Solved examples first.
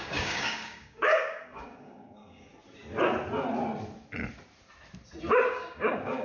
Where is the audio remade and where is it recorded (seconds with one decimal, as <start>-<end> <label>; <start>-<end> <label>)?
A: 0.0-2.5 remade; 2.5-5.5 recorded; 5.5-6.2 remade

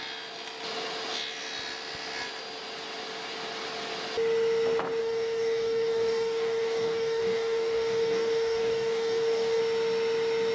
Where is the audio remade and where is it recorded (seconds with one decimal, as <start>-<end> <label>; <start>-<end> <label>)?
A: 0.0-5.0 recorded; 5.0-9.6 remade; 9.6-10.5 recorded

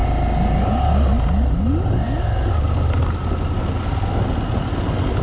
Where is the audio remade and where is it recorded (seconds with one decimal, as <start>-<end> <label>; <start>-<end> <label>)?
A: 0.0-5.2 recorded

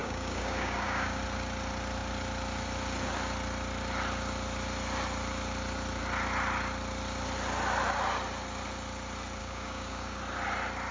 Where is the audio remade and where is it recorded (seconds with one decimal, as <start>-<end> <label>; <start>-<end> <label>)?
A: 0.0-1.2 remade; 1.2-9.4 recorded; 9.4-10.2 remade; 10.2-10.9 recorded

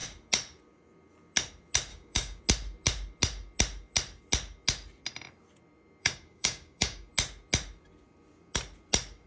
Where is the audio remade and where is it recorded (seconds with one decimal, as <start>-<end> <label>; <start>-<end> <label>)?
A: 0.0-1.9 recorded; 1.9-2.4 remade; 2.4-6.0 recorded; 6.0-7.1 remade; 7.1-9.3 recorded